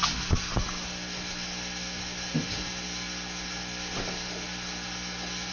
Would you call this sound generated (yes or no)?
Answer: no